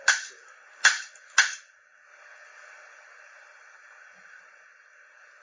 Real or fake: real